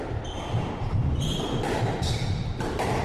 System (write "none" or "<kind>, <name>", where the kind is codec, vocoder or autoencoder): none